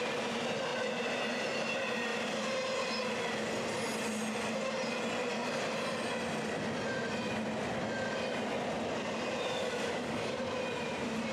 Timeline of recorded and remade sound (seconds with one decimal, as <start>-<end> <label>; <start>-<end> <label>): 0.0-9.6 recorded; 9.6-10.4 remade; 10.4-11.3 recorded